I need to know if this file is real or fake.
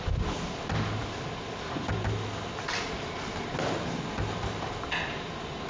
real